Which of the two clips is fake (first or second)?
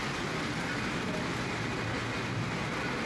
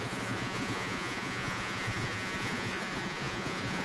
second